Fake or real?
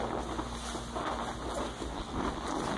real